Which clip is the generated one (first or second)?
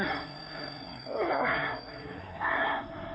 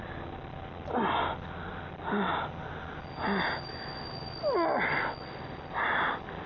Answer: first